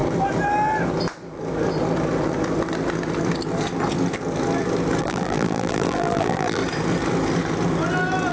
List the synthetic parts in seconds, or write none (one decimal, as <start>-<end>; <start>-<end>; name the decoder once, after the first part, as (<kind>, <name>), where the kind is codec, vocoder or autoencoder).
5.0-6.6 (vocoder, BigVGAN v2)